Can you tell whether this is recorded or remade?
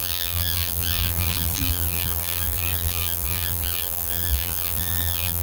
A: remade